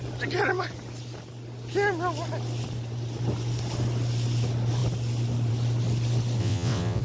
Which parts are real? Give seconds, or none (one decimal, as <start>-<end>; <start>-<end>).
0.0-6.4